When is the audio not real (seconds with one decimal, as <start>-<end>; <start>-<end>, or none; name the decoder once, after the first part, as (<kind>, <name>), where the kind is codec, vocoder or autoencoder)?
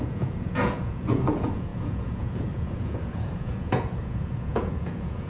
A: 0.0-5.3 (vocoder, Vocos)